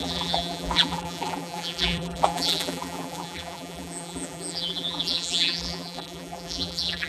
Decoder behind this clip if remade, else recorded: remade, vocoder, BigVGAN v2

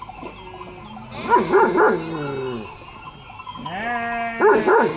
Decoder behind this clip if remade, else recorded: recorded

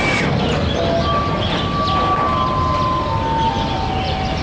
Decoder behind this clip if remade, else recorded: recorded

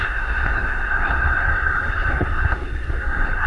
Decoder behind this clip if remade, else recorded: remade, codec, SNAC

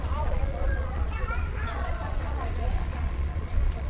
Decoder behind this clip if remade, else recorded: remade, vocoder, Vocos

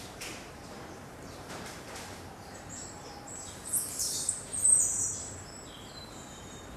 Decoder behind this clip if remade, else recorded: remade, vocoder, BigVGAN v2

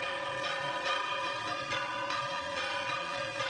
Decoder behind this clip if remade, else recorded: remade, vocoder, Vocos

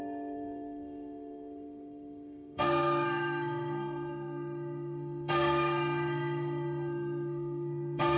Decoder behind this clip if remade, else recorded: remade, codec, SNAC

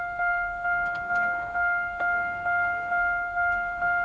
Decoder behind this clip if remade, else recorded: remade, codec, SNAC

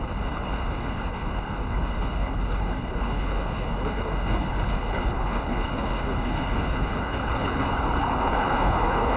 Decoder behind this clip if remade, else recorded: remade, codec, HILCodec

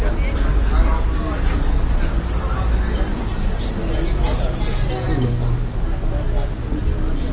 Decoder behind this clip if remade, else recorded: recorded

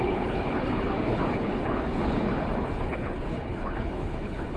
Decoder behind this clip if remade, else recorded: remade, codec, HILCodec